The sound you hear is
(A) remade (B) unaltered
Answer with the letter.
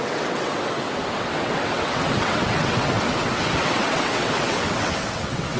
A